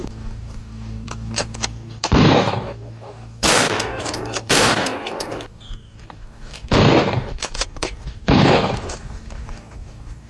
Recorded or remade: remade